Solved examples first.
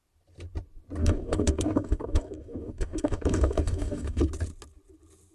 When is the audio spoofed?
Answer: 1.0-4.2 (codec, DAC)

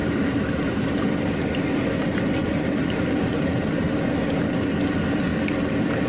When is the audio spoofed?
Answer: 0.0-0.9 (vocoder, BigVGAN v2); 2.4-3.9